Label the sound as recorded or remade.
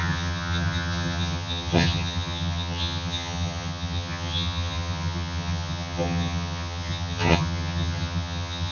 remade